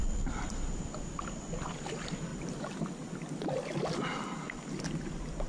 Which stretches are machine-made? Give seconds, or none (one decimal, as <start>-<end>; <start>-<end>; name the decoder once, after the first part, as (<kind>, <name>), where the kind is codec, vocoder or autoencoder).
none